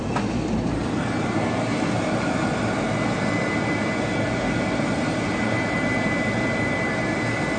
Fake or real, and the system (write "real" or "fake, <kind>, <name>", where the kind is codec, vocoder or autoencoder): real